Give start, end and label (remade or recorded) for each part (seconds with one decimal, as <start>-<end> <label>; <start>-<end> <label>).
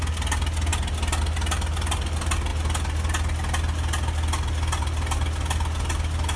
0.0-6.4 recorded